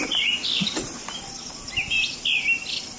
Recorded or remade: recorded